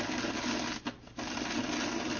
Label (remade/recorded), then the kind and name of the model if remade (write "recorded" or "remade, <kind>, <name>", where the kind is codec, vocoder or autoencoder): recorded